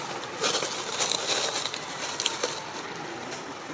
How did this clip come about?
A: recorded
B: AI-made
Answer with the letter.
A